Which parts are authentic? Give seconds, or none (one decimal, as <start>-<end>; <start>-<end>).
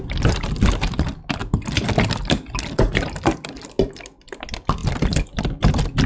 0.0-6.1